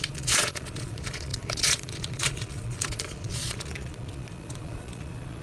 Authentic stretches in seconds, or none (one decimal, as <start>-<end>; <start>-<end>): none